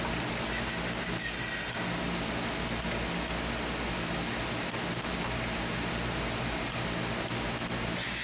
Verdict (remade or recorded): recorded